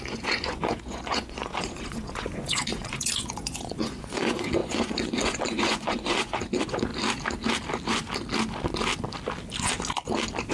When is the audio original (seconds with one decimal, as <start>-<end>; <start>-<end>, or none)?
6.9-10.5